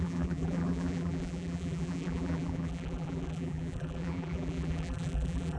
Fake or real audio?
fake